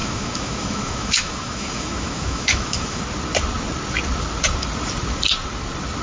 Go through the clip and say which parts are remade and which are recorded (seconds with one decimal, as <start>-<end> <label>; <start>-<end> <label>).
0.0-3.0 remade; 3.0-6.0 recorded